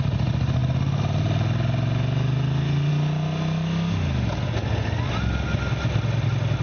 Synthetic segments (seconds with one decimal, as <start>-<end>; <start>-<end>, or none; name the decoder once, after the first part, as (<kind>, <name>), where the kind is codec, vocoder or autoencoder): none

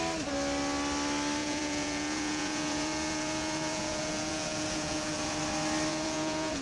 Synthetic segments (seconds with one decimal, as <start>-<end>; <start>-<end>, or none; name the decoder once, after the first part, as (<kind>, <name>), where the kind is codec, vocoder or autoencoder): 1.4-5.4 (vocoder, Vocos); 5.9-6.6

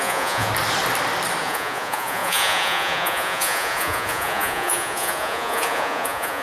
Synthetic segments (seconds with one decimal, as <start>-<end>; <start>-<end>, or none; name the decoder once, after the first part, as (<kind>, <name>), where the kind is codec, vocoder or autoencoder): 0.0-0.5 (vocoder, Vocos); 1.4-6.4

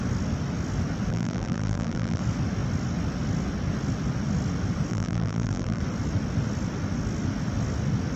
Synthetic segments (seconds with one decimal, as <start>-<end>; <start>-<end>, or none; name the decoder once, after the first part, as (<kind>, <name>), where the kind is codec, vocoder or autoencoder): 1.1-2.2 (vocoder, BigVGAN v2); 4.9-5.8